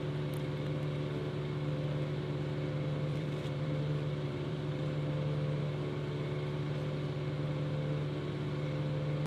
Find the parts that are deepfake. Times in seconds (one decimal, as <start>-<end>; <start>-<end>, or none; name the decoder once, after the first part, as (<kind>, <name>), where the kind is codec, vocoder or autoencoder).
3.1-5.6 (vocoder, BigVGAN v2)